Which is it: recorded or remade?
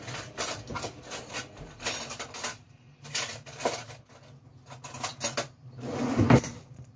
recorded